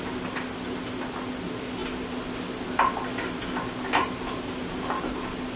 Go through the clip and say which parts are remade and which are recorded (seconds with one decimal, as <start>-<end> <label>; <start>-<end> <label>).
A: 0.0-5.6 recorded